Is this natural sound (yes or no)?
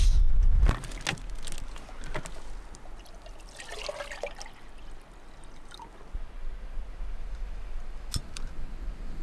yes